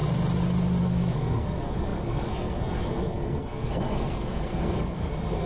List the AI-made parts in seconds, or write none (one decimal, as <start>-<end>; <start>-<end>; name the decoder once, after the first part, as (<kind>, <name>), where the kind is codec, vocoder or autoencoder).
0.8-5.5 (codec, SNAC)